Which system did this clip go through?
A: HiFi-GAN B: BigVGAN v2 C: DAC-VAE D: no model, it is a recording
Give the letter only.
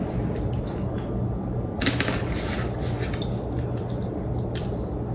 D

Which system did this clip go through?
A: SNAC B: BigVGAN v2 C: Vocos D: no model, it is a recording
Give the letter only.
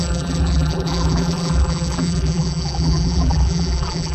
B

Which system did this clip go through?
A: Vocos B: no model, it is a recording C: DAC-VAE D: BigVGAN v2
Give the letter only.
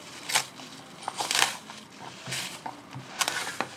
B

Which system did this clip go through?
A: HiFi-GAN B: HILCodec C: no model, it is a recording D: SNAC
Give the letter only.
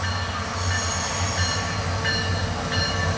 C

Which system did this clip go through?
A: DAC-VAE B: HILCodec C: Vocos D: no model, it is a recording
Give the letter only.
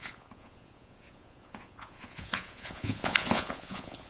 C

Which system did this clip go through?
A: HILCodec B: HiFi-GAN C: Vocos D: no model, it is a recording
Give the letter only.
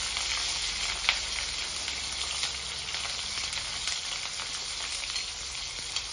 D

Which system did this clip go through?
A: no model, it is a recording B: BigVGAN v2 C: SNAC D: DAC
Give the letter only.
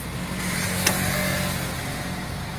A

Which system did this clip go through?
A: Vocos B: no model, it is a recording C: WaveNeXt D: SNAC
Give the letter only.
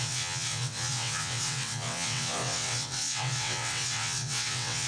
C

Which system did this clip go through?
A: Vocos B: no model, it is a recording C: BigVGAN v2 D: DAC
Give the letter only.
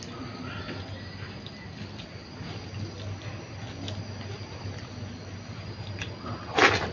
B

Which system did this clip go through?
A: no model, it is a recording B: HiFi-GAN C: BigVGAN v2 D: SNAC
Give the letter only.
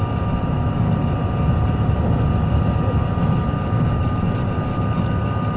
A